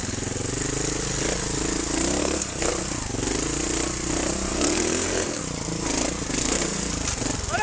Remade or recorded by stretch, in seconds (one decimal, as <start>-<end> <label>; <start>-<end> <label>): 0.0-2.2 recorded; 2.2-2.7 remade; 2.7-4.5 recorded; 4.5-5.4 remade; 5.4-6.4 recorded; 6.4-6.9 remade; 6.9-7.6 recorded